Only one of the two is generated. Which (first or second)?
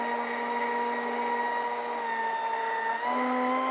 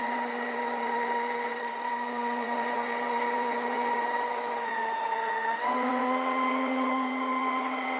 second